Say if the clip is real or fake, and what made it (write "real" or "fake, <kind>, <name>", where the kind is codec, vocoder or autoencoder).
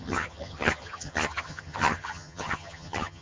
fake, vocoder, HiFi-GAN